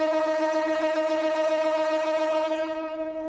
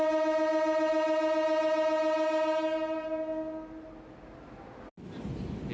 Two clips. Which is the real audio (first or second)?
second